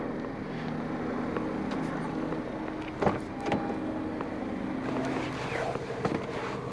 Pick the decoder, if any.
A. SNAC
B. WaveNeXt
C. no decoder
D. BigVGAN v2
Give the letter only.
C